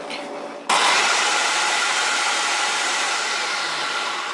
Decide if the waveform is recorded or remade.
recorded